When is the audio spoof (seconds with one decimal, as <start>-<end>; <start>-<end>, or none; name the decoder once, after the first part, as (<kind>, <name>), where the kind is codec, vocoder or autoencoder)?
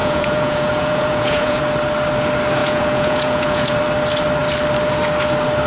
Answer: 0.0-1.6 (vocoder, Vocos); 2.6-3.8